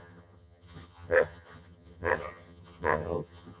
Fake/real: fake